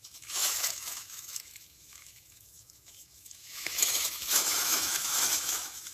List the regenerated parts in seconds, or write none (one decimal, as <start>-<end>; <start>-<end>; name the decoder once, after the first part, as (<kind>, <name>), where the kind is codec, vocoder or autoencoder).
0.0-5.9 (autoencoder, DAC-VAE)